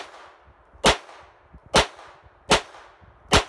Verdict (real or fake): real